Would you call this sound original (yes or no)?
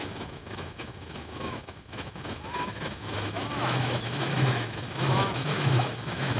no